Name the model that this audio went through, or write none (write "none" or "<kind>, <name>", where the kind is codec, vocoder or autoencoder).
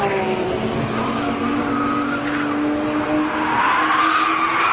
none